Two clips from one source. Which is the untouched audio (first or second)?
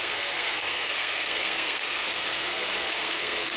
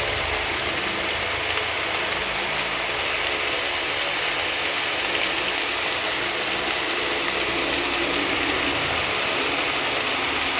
second